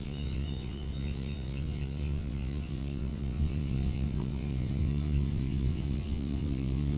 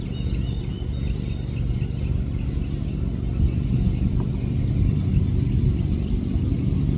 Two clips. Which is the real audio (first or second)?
second